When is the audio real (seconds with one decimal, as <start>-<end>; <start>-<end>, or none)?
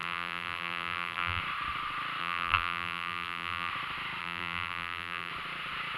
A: 1.4-2.2; 3.7-4.2; 5.3-6.0